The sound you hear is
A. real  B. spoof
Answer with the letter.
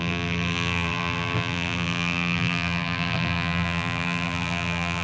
B